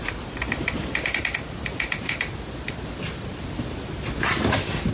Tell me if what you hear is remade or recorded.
recorded